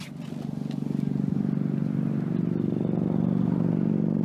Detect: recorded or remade recorded